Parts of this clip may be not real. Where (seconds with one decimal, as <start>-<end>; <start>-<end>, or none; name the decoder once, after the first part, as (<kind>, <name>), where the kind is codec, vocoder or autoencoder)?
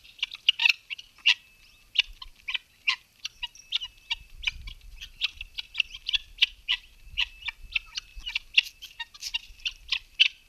none